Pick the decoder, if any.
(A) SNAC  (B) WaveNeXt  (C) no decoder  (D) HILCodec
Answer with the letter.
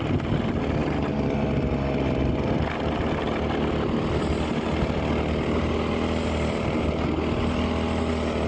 C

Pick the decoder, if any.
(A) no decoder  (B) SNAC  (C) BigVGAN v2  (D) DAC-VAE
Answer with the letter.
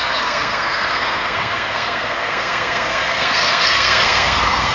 B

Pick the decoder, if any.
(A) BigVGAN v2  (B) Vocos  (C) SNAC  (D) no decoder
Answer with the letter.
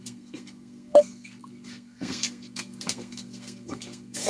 C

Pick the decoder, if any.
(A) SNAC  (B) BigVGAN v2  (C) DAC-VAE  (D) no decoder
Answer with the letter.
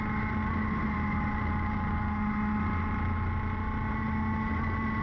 D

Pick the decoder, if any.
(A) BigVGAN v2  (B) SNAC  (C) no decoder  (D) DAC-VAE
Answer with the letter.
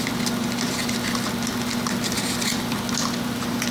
C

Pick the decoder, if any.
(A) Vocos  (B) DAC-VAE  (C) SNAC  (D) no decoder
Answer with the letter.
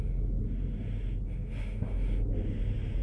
D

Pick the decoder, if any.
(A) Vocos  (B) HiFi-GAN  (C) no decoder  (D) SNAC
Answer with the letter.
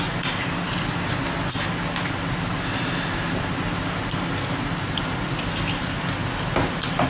C